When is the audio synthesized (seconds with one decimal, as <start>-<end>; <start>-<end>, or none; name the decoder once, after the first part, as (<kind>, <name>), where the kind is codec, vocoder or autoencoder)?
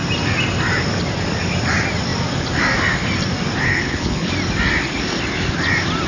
3.7-4.3 (codec, HILCodec)